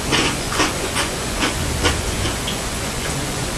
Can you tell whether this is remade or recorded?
remade